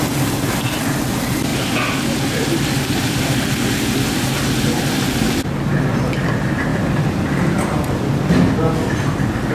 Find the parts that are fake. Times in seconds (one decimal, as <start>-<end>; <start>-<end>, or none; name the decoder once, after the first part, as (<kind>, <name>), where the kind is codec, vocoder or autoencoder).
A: 1.5-4.3 (vocoder, BigVGAN v2); 6.7-8.2